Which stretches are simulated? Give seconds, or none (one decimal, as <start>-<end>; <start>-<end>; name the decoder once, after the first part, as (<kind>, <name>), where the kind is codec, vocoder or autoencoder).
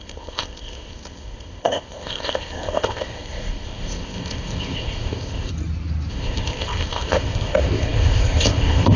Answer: 0.0-5.5 (codec, ZipCodec); 6.1-9.0